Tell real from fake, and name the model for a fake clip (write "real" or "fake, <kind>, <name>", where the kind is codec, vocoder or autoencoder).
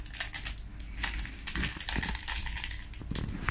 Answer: real